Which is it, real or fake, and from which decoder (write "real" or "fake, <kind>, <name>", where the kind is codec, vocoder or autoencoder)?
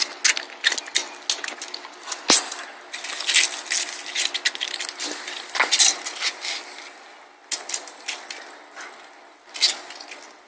real